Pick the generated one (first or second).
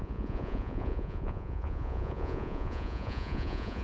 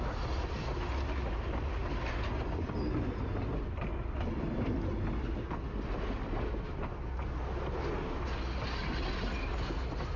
first